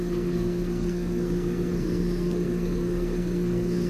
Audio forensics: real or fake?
fake